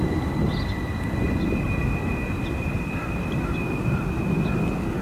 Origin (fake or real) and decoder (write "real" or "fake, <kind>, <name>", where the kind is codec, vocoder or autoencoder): real